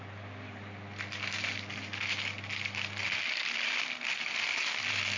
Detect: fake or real real